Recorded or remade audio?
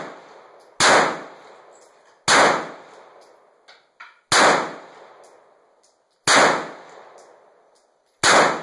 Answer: recorded